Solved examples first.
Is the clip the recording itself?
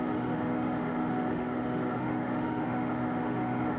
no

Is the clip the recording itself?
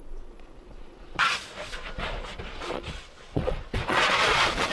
no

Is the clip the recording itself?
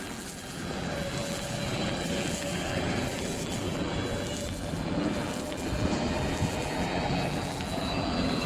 no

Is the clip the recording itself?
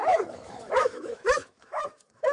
no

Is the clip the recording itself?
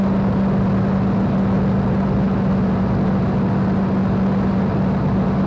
yes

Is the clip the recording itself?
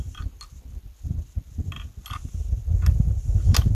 yes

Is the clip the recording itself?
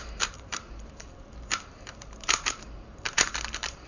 no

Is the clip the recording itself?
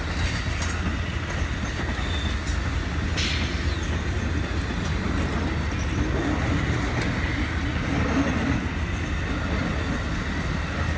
yes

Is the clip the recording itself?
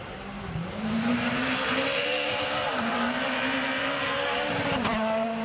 no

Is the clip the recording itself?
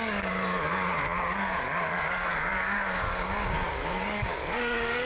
no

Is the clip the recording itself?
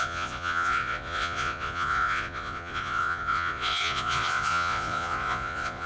no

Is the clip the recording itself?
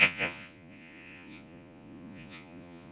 no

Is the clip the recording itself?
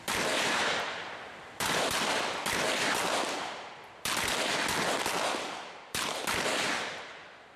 no